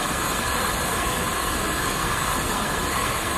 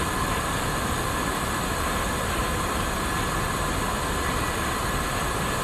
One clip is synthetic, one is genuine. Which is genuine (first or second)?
second